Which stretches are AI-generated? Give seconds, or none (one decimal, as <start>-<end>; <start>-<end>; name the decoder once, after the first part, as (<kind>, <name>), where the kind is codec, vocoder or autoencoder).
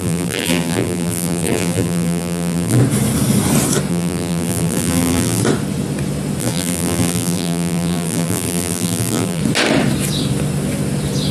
0.0-2.8 (vocoder, BigVGAN v2); 3.9-5.4; 6.4-9.4